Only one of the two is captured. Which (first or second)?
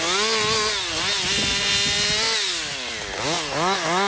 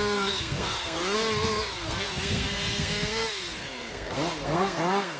first